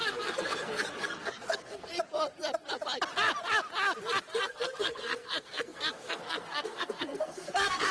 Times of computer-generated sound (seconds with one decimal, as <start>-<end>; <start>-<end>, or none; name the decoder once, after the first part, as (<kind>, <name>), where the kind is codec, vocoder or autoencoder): 0.0-1.9 (codec, SNAC); 4.4-7.9